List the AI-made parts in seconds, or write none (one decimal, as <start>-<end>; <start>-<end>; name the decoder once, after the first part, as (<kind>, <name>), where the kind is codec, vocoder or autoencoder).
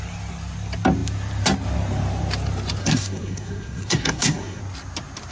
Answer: 2.8-4.6 (codec, SNAC)